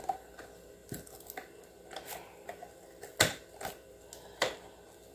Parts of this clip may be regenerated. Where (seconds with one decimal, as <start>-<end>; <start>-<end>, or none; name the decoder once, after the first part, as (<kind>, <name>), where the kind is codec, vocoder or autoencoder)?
none